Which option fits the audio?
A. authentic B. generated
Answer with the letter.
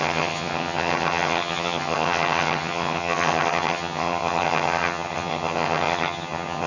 B